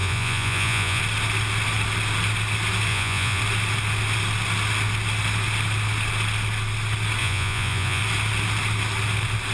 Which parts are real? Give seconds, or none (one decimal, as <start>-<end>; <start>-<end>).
1.0-2.9; 3.4-7.2; 8.0-9.5